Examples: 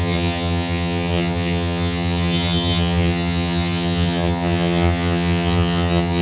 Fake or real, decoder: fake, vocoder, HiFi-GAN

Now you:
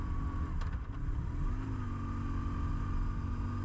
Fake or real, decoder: real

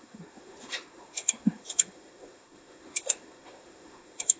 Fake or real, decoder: fake, autoencoder, DAC-VAE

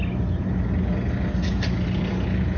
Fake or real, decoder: real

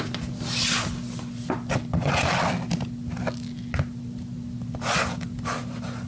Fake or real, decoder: real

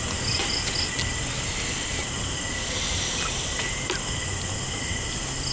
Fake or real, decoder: real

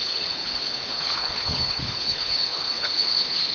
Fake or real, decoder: fake, codec, HILCodec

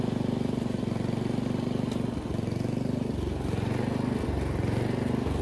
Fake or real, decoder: real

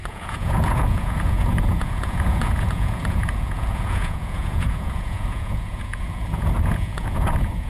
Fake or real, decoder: fake, vocoder, Vocos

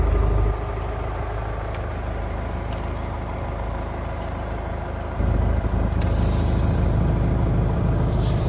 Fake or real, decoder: fake, vocoder, BigVGAN v2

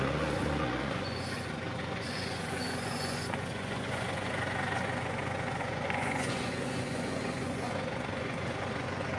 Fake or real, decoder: fake, vocoder, Vocos